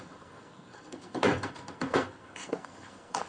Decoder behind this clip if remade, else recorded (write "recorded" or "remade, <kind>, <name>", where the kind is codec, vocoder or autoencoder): remade, codec, SNAC